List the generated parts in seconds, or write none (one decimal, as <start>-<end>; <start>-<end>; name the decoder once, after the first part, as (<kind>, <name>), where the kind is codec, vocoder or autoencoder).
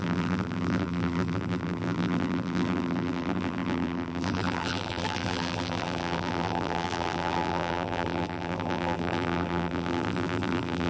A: 0.0-10.9 (vocoder, BigVGAN v2)